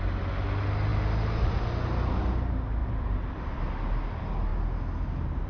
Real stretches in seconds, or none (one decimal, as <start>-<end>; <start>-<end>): 0.0-2.8; 3.6-5.5